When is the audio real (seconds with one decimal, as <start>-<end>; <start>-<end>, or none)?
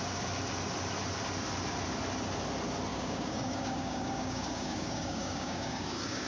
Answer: 0.0-2.9